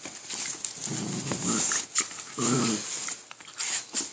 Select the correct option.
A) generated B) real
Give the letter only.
B